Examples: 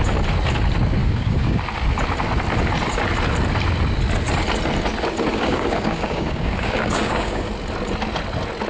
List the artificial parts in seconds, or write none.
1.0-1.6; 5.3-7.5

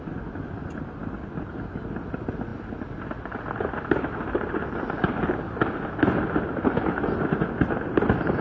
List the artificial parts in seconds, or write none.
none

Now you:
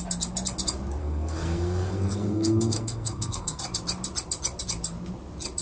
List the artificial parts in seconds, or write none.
1.0-3.6